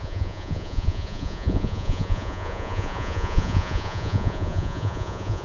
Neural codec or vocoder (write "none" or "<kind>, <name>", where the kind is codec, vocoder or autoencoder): vocoder, Vocos